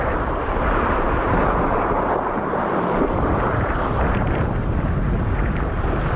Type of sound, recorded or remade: remade